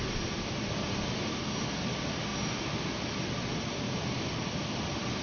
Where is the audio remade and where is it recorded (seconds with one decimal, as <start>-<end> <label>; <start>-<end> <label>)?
0.0-5.2 recorded